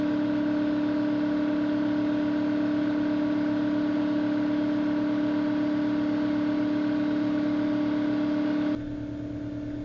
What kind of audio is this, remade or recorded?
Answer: recorded